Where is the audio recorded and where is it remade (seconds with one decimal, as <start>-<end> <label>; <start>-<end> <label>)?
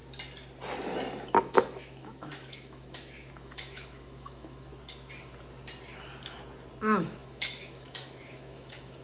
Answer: 0.0-1.3 recorded; 1.3-4.7 remade; 4.7-6.8 recorded; 6.8-9.0 remade